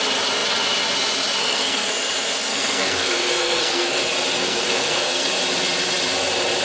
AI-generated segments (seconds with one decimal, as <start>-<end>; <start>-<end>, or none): 1.4-1.9; 2.5-4.0; 4.4-5.3